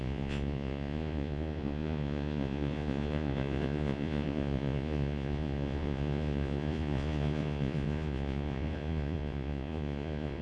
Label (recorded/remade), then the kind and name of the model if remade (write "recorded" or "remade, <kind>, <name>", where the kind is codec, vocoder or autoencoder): remade, vocoder, Vocos